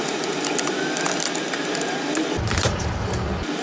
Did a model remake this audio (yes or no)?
no